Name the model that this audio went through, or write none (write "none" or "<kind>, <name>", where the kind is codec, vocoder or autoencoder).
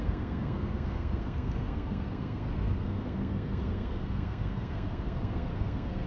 codec, SNAC